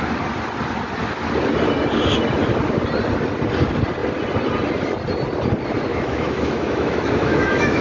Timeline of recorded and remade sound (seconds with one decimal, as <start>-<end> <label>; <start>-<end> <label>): 0.0-5.9 recorded; 5.9-7.8 remade